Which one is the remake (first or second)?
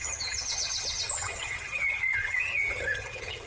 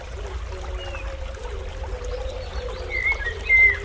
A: first